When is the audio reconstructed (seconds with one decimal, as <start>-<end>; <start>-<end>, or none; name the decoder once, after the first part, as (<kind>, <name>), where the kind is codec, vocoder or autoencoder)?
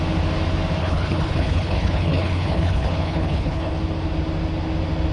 0.8-3.7 (codec, HILCodec)